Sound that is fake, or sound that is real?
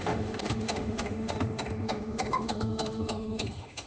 fake